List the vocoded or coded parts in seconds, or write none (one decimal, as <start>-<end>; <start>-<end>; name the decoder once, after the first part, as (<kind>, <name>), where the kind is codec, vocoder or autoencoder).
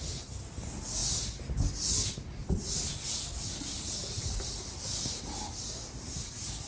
none